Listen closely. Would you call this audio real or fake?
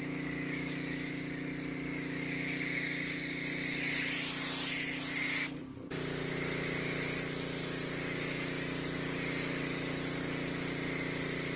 real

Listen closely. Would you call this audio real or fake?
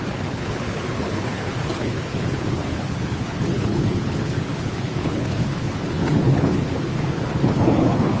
fake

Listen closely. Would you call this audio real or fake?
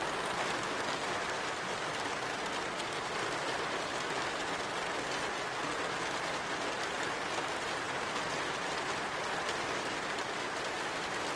real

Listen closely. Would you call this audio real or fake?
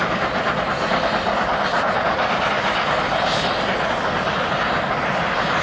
real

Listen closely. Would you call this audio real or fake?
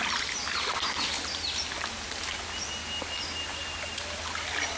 real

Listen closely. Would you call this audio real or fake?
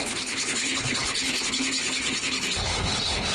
fake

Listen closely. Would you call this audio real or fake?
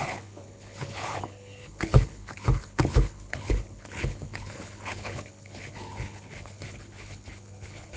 fake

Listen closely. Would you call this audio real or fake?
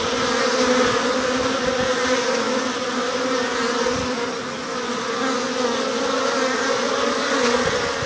real